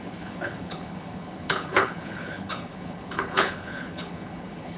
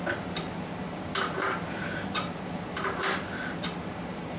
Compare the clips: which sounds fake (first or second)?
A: first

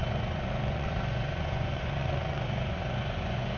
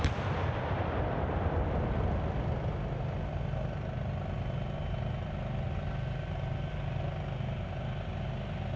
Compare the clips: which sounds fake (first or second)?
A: first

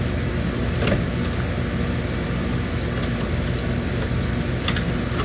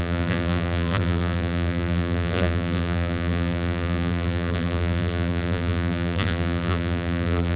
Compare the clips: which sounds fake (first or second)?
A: second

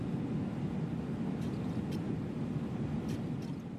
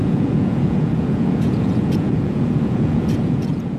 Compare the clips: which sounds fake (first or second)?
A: second